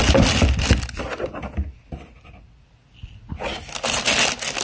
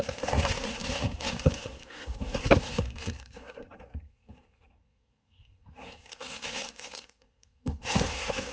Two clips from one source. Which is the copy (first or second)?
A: second